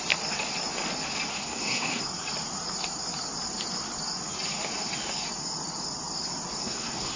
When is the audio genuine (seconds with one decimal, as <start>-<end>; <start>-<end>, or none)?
0.0-1.3; 2.0-6.6